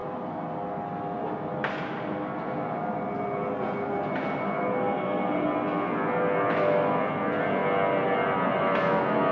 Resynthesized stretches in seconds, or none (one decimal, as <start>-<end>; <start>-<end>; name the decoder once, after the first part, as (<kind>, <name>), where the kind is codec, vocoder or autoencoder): none